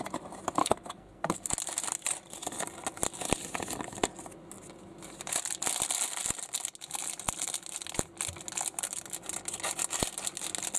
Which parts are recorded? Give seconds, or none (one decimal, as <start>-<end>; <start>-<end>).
0.0-0.6; 1.5-10.8

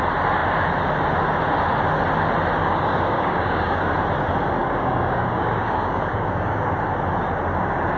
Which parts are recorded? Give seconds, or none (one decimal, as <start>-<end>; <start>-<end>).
0.0-2.6; 3.9-4.6; 6.7-8.0

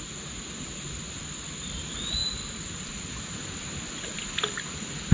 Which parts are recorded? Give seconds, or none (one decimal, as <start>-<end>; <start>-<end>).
0.0-5.1

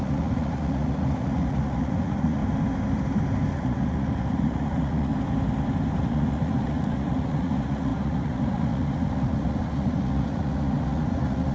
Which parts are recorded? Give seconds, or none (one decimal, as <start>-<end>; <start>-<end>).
2.4-3.5; 5.1-6.0